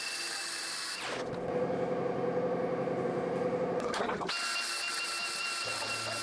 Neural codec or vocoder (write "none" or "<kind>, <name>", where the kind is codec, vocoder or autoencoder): none